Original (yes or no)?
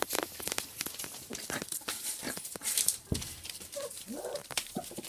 yes